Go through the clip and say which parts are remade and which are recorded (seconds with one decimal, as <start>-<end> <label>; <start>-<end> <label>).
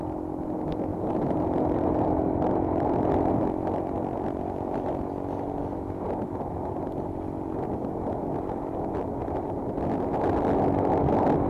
0.0-0.9 recorded; 0.9-3.0 remade; 3.0-9.2 recorded; 9.2-9.8 remade; 9.8-11.5 recorded